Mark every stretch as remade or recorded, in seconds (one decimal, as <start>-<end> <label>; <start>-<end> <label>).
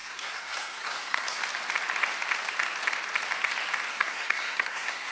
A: 0.0-1.4 remade; 1.4-3.9 recorded; 3.9-5.1 remade